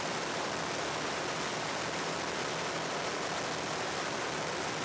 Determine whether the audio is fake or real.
real